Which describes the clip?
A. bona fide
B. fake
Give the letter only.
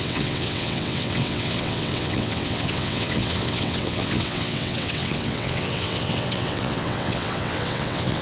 B